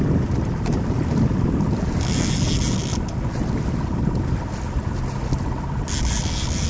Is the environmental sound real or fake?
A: real